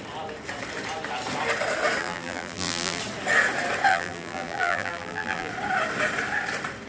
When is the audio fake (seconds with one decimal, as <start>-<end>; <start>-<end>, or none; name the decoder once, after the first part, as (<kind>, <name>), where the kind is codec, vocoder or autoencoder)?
2.0-3.0 (vocoder, BigVGAN v2); 3.9-5.5